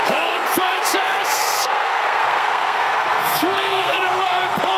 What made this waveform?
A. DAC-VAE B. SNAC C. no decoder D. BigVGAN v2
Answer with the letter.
B